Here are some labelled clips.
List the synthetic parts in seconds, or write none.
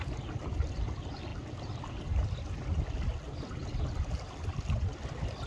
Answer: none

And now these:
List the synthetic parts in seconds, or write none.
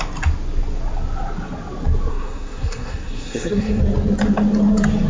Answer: 2.1-3.8 (codec, SNAC)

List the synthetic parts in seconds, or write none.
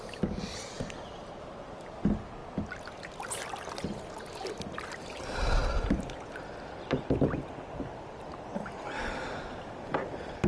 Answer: none